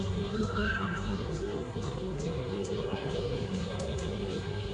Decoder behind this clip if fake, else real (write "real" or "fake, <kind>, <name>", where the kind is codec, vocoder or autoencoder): fake, codec, SNAC